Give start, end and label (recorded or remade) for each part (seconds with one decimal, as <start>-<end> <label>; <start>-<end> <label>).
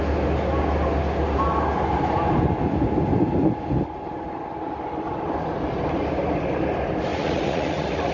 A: 0.0-7.1 recorded; 7.1-8.1 remade